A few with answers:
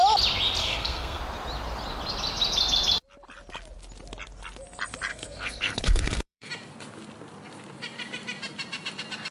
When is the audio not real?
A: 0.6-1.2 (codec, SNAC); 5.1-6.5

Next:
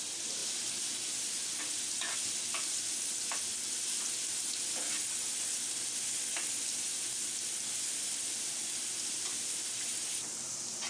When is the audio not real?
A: none

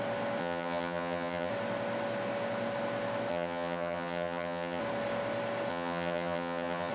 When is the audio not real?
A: 0.4-1.5 (vocoder, HiFi-GAN); 3.3-4.8; 5.7-6.9